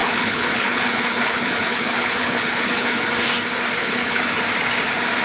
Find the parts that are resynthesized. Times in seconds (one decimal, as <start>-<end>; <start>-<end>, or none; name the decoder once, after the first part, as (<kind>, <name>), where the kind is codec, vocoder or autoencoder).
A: 0.0-3.1 (codec, HILCodec); 3.8-4.3